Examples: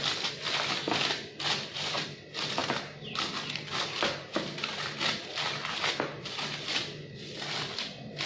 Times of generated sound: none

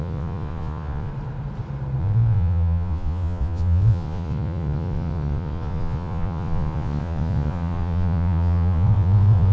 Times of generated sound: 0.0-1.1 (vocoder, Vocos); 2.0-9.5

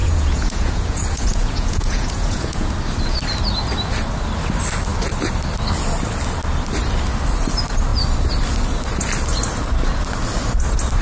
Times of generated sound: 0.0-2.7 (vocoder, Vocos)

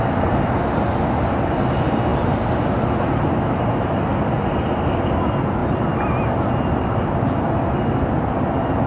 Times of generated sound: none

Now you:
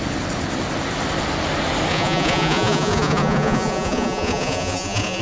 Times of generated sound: 1.9-5.2 (vocoder, Vocos)